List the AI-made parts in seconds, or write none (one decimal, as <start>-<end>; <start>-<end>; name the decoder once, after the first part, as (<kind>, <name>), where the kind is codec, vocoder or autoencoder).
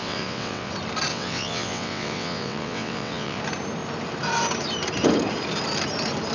0.0-0.7 (vocoder, WaveNeXt); 1.1-3.4